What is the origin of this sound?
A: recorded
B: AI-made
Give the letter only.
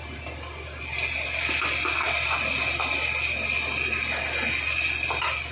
A